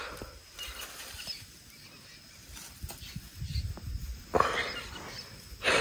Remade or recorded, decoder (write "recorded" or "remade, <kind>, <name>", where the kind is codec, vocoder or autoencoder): recorded